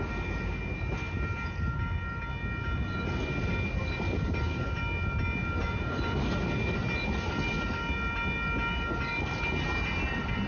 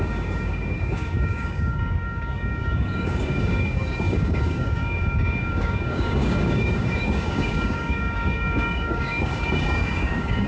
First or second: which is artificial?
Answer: second